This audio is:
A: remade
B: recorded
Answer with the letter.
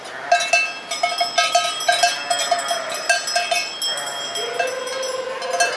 B